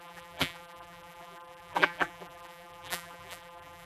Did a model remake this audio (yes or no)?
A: yes